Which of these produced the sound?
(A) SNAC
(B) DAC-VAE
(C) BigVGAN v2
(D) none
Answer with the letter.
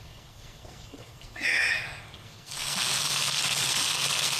A